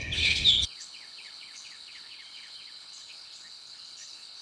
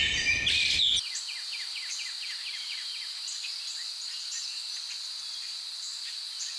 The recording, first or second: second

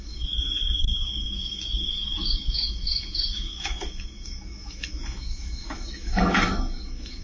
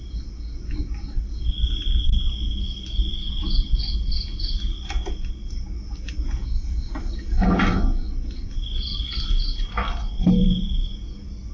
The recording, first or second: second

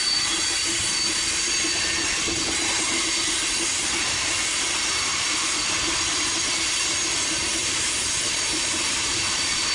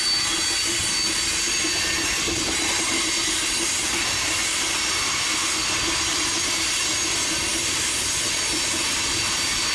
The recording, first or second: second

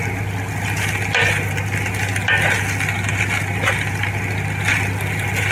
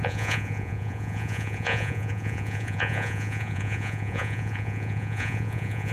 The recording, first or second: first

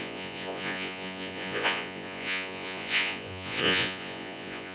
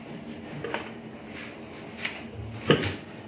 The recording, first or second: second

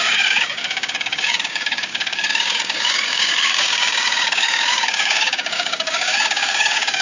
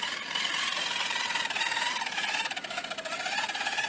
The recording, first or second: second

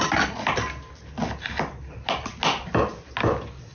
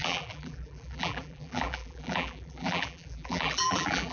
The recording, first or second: first